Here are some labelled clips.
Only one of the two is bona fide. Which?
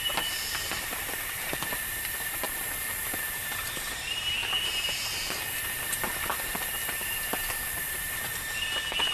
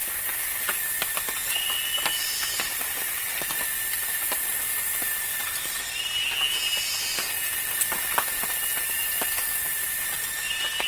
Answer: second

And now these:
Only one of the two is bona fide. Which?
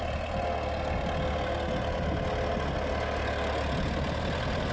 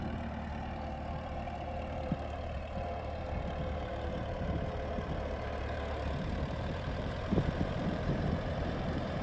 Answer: first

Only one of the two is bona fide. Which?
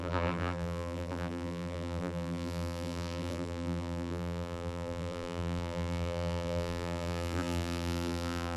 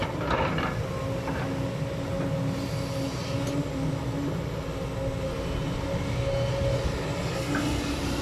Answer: second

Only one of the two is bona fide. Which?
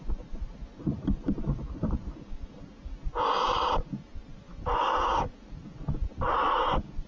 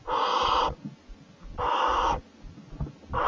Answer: second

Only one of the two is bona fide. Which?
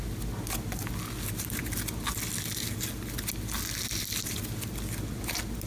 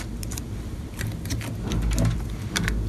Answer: first